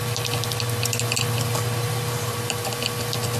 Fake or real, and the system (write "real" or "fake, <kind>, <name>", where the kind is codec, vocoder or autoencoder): real